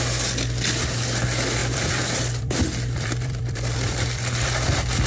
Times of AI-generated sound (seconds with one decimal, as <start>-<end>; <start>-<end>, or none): 1.6-5.1